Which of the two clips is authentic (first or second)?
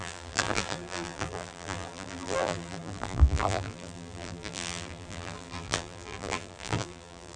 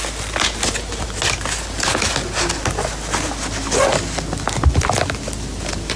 second